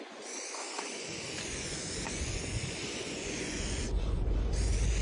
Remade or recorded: remade